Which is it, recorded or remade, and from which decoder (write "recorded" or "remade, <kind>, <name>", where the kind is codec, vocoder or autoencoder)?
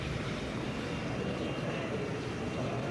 remade, vocoder, BigVGAN v2